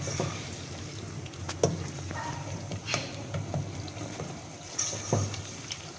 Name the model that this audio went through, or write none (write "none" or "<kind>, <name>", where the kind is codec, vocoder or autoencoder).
none